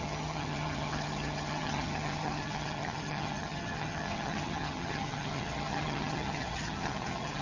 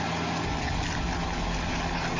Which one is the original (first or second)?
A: second